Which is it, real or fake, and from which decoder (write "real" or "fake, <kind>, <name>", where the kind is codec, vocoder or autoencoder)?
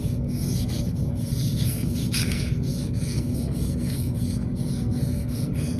fake, codec, SNAC